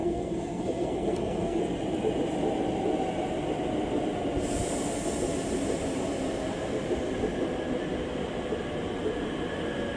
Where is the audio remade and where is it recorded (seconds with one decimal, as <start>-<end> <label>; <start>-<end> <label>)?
0.0-1.6 remade; 1.6-10.0 recorded